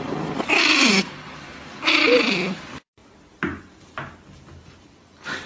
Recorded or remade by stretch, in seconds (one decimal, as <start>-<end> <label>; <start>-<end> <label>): 0.0-3.0 remade; 3.0-4.6 recorded; 4.6-5.5 remade